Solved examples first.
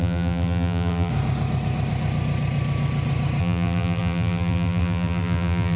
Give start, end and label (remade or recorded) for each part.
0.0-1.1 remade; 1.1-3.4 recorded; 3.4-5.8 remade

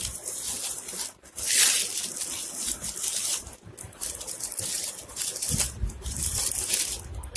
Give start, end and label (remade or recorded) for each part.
0.0-7.4 recorded

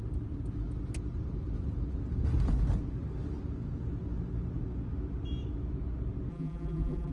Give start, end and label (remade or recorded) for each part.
0.0-6.3 recorded; 6.3-7.1 remade

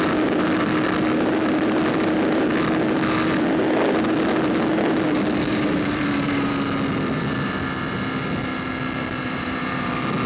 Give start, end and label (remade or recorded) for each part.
0.0-5.5 recorded; 5.5-6.5 remade; 6.5-9.2 recorded; 9.2-9.9 remade; 9.9-10.3 recorded

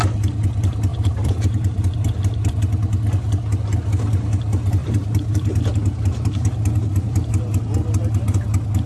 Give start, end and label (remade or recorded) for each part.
0.0-0.9 recorded; 0.9-2.5 remade; 2.5-4.8 recorded; 4.8-7.3 remade; 7.3-8.9 recorded

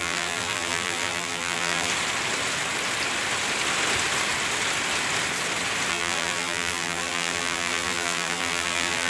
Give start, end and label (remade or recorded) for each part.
0.0-1.9 remade; 1.9-5.9 recorded; 5.9-9.1 remade

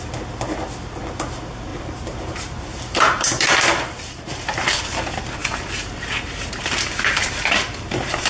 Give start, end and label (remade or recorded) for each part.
0.0-1.7 recorded; 1.7-4.8 remade; 4.8-5.4 recorded; 5.4-8.3 remade

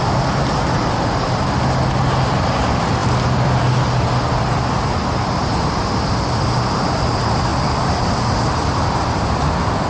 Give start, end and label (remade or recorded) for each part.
0.0-3.0 recorded; 3.0-3.6 remade; 3.6-9.9 recorded